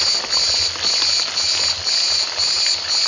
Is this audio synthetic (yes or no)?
no